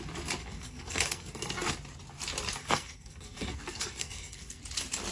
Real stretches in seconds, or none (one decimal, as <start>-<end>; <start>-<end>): 0.0-0.4; 1.7-2.6; 4.6-5.1